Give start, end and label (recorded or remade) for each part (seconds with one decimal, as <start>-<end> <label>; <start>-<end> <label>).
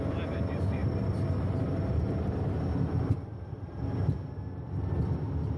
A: 0.0-5.6 recorded